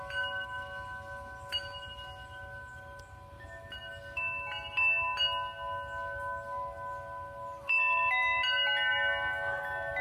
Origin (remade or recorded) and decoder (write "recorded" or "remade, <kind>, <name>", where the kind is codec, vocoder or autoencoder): recorded